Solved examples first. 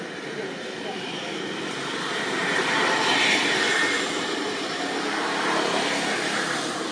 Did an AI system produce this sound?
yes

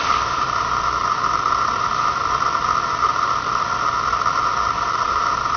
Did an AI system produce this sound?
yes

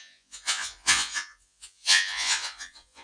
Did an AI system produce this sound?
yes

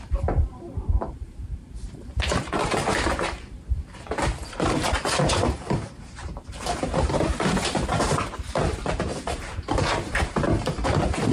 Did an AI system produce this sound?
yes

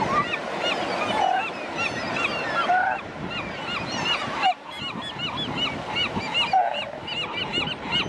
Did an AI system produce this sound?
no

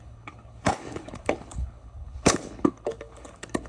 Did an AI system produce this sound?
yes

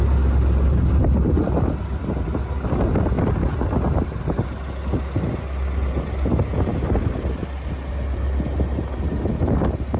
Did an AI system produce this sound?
no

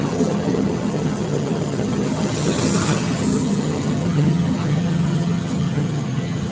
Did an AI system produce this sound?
yes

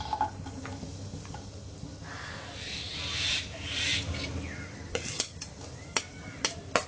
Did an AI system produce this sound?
no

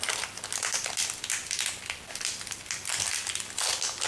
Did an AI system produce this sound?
no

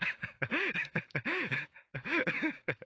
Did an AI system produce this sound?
yes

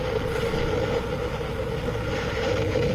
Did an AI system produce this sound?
no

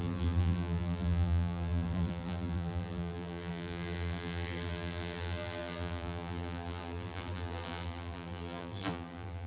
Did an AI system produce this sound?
yes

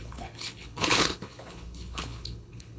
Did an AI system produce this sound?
yes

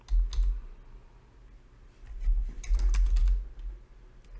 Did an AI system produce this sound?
no